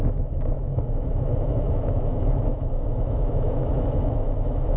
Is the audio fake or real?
fake